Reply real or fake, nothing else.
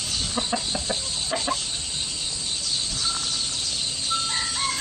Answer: real